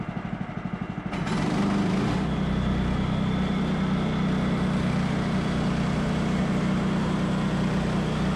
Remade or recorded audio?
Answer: recorded